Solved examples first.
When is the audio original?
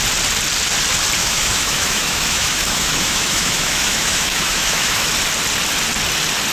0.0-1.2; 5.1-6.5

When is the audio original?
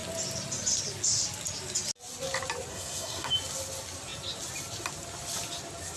0.0-2.7; 3.3-6.0